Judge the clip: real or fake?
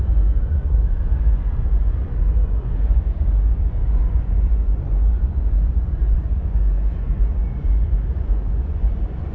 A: fake